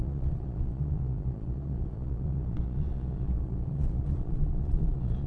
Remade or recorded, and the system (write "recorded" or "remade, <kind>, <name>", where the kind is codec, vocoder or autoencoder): remade, vocoder, Vocos